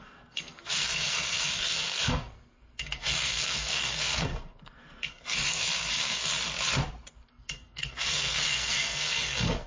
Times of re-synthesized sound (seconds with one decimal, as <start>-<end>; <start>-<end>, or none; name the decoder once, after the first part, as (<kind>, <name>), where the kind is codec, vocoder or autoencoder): 0.0-6.3 (codec, SNAC); 7.1-9.7